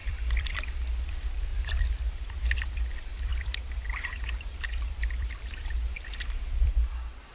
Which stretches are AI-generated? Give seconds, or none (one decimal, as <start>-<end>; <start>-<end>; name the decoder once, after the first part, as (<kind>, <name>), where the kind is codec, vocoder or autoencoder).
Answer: 0.0-7.3 (vocoder, BigVGAN v2)